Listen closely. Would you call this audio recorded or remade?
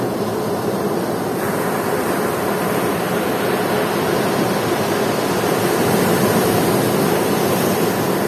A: recorded